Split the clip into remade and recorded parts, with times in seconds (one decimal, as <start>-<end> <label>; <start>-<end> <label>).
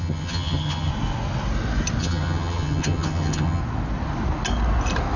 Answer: 0.0-0.9 remade; 0.9-2.0 recorded; 2.0-3.6 remade; 3.6-5.2 recorded